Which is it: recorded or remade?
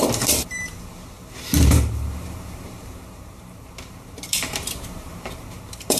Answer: remade